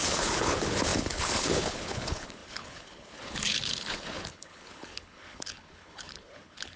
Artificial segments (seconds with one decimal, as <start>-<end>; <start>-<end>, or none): 0.0-6.8